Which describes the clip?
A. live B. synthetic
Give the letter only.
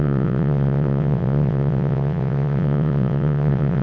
B